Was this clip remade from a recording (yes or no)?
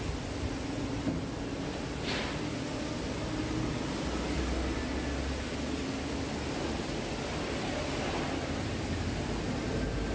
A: no